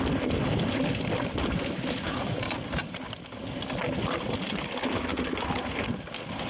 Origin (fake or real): real